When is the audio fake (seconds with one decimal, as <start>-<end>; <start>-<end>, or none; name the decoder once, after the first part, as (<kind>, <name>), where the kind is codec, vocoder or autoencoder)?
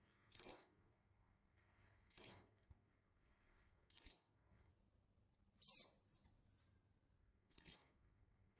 0.0-4.7 (codec, SNAC); 7.2-8.6